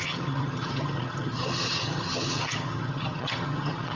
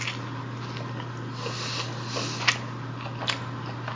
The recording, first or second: second